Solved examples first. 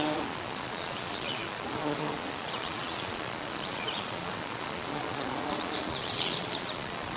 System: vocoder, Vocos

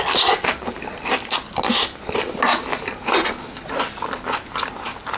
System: none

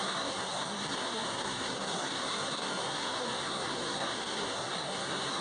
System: codec, SNAC